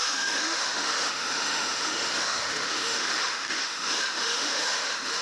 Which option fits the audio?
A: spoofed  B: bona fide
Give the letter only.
A